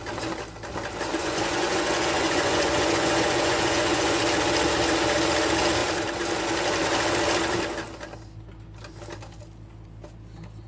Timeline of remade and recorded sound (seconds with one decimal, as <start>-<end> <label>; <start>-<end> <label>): 0.0-1.2 recorded; 1.2-4.2 remade; 4.2-10.7 recorded